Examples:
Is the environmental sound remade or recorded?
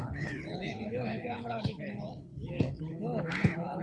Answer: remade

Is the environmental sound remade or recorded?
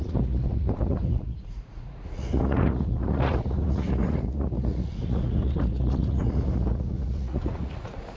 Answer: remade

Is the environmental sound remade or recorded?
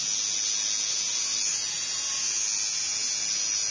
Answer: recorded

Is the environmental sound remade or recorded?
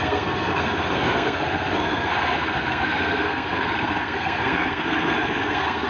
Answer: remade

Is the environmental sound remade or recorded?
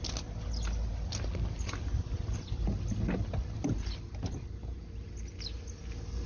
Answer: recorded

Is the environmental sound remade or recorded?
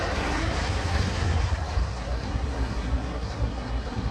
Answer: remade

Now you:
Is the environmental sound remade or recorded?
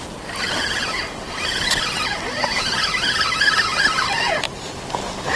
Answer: recorded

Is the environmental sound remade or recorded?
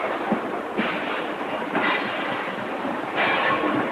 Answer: recorded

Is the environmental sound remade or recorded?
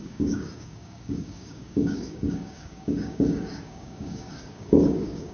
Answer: remade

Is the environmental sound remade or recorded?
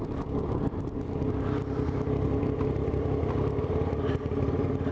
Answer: recorded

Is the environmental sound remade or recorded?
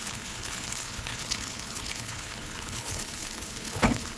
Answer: remade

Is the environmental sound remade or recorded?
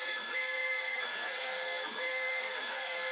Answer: remade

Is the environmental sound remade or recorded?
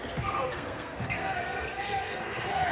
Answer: remade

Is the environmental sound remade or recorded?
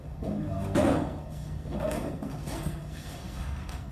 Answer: remade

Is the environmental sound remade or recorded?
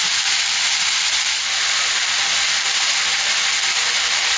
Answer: recorded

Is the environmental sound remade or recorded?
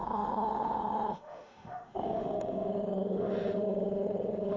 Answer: remade